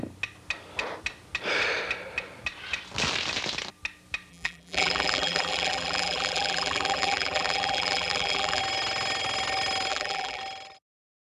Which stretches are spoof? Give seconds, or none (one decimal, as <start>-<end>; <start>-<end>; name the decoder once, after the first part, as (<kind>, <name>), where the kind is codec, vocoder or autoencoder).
4.3-8.6 (vocoder, BigVGAN v2); 9.9-10.4